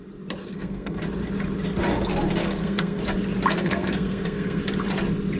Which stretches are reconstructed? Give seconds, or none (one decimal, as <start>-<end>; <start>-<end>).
0.4-1.0; 2.4-3.0; 3.6-4.6